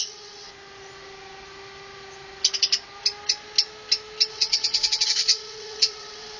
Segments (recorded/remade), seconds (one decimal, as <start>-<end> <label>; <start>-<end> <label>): 0.0-0.5 remade; 0.5-4.3 recorded; 4.3-6.4 remade